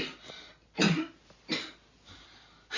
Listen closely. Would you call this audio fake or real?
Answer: real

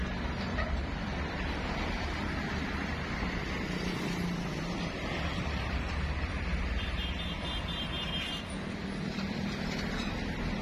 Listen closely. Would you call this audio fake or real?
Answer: fake